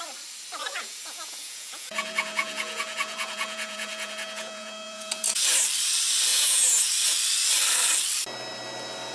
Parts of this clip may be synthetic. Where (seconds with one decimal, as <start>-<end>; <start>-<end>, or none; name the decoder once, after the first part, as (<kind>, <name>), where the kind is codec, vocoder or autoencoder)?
0.6-5.4 (vocoder, Vocos); 6.3-6.9